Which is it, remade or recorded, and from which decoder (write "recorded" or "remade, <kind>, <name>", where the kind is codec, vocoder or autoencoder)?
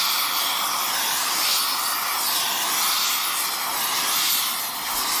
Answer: recorded